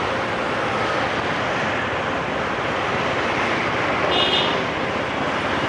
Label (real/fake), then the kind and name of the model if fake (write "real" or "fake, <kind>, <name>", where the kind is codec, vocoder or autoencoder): real